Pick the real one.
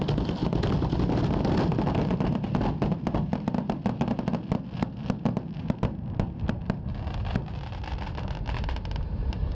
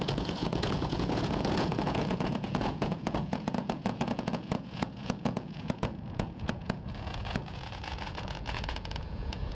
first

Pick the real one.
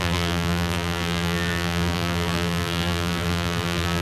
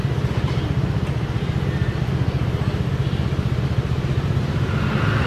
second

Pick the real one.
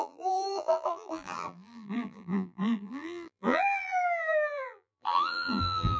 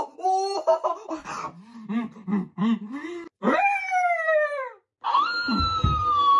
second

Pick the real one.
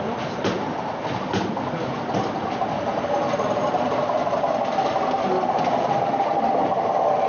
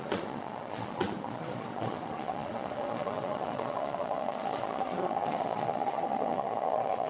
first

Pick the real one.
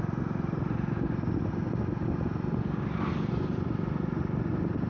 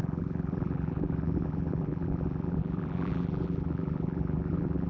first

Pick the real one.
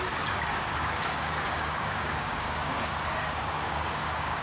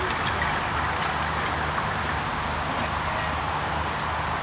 second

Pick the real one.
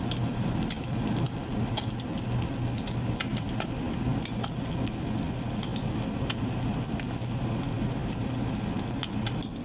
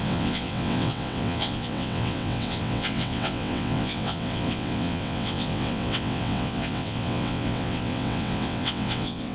first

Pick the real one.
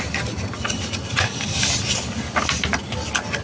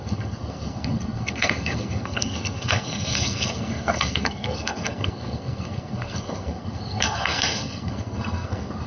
first